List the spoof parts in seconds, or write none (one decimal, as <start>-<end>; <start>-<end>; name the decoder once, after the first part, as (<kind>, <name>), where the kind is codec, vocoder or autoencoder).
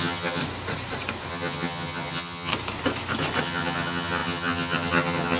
0.0-0.4 (vocoder, HiFi-GAN); 1.3-2.5; 3.4-5.4